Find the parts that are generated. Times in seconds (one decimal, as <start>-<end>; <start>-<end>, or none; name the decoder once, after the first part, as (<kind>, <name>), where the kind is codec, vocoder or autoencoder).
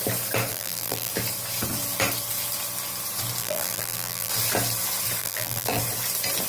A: 0.5-1.1 (vocoder, BigVGAN v2); 3.4-4.3; 5.2-5.8